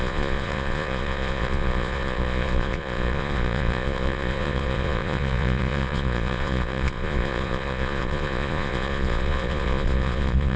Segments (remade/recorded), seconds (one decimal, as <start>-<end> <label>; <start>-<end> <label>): 0.0-10.6 remade